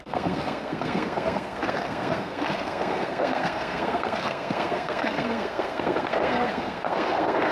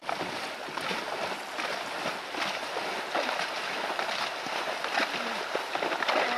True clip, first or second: second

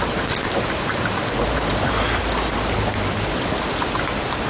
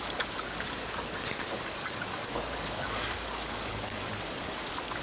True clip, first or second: first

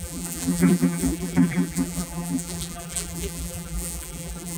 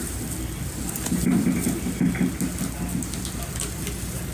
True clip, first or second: second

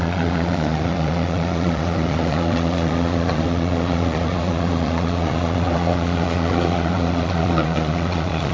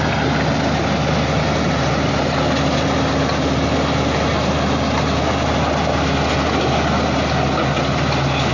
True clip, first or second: second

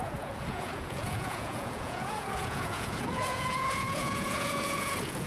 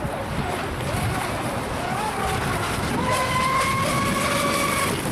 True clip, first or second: second